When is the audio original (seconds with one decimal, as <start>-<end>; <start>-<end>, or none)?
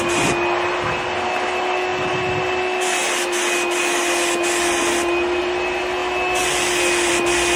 0.0-7.6